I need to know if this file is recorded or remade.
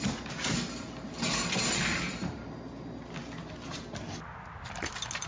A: recorded